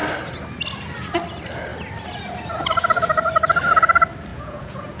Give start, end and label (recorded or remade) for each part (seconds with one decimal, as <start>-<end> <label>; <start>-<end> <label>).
0.0-4.3 recorded; 4.3-5.0 remade